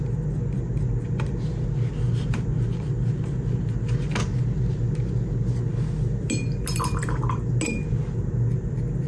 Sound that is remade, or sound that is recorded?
recorded